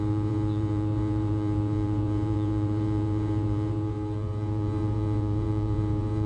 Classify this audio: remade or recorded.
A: remade